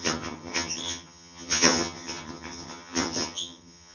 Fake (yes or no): yes